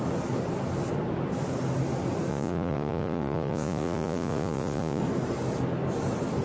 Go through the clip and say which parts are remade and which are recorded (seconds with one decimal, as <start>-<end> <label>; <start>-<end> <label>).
0.0-2.3 recorded; 2.3-5.0 remade; 5.0-6.4 recorded